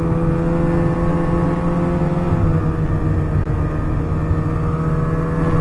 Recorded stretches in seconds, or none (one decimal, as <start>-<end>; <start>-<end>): 0.0-5.6